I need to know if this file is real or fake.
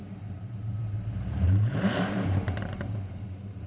fake